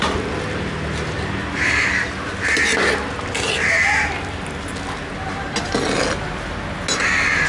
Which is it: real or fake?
real